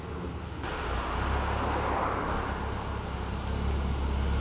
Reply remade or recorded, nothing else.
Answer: recorded